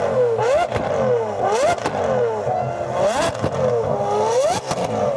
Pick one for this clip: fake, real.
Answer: real